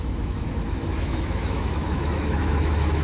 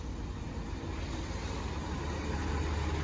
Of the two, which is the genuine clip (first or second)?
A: second